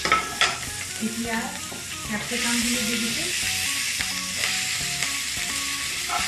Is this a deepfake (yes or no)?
yes